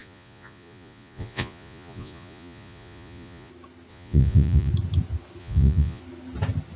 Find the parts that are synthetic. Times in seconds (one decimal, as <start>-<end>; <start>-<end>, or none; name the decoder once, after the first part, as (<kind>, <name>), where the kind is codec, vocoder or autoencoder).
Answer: 0.0-3.5 (vocoder, Vocos); 3.9-4.7; 5.4-6.0